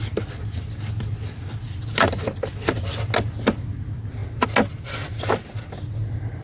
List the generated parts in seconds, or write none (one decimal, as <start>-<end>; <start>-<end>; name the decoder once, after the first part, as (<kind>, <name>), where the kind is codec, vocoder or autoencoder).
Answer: none